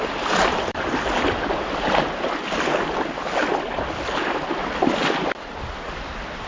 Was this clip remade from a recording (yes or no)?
no